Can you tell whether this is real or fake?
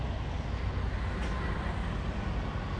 real